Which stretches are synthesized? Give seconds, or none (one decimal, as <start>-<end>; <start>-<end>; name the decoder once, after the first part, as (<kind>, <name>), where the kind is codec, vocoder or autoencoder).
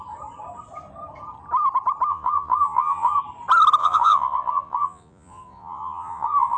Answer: 2.1-3.2 (vocoder, Vocos); 3.8-6.6